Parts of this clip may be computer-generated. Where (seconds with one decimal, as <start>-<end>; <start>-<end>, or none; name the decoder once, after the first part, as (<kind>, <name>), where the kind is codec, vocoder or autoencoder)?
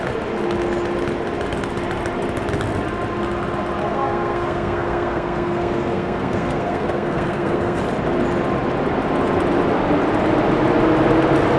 3.8-7.8 (codec, SNAC)